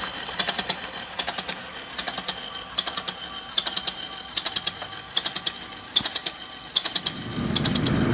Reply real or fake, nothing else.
real